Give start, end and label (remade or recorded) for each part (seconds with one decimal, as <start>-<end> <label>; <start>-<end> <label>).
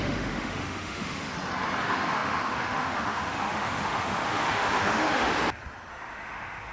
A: 0.0-1.3 remade; 1.3-1.8 recorded; 1.8-5.3 remade; 5.3-5.9 recorded; 5.9-6.7 remade